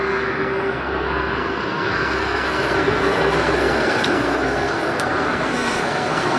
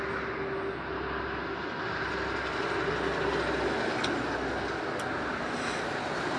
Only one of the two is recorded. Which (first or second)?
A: second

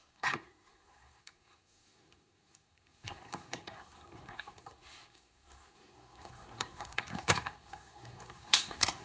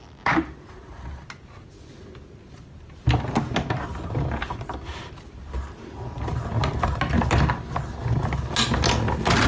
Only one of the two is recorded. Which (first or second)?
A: second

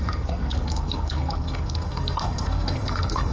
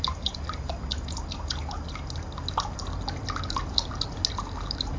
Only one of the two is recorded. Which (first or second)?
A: second